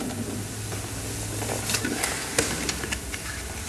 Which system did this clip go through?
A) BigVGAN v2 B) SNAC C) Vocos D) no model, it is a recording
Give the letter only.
D